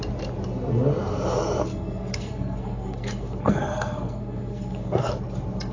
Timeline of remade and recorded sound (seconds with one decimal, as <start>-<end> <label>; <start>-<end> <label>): 0.0-1.7 recorded; 1.7-5.1 remade; 5.1-5.7 recorded